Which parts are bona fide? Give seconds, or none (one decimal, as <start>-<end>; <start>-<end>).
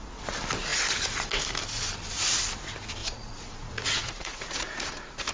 0.0-3.0